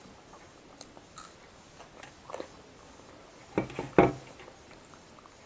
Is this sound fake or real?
real